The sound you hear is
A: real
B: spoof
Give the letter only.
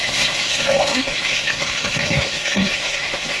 B